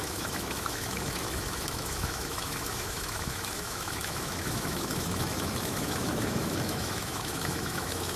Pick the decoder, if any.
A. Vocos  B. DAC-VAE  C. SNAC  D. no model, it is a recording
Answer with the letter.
B